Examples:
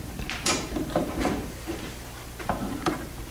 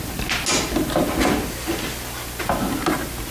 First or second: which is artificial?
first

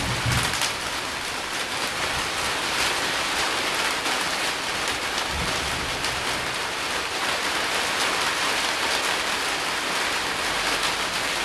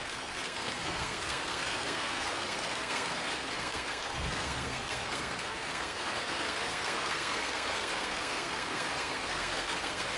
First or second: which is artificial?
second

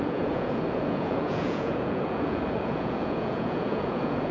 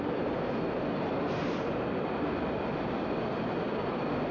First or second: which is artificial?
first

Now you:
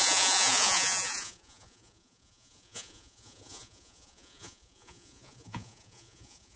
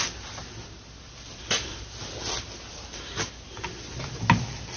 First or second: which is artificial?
first